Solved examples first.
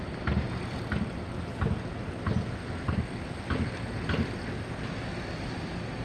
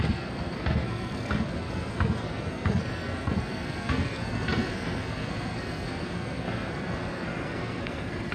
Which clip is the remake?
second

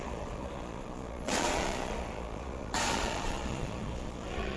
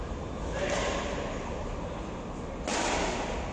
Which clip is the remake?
first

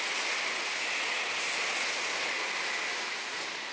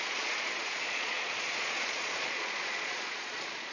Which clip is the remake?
second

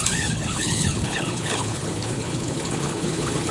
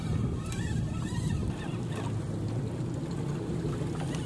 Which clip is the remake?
first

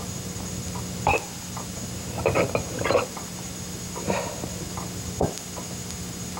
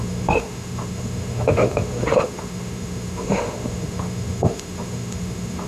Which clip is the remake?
second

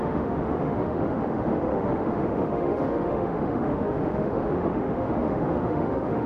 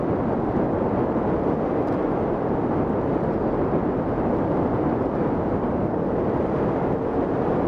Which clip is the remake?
first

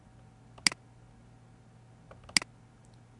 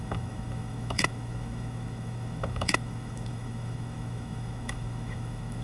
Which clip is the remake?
second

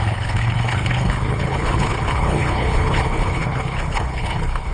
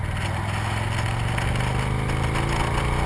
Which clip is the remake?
first